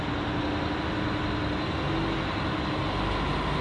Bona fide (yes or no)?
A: yes